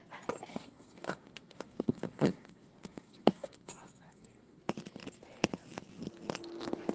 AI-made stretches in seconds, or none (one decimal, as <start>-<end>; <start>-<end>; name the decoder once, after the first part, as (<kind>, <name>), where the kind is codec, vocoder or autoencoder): 0.5-4.6 (codec, SNAC)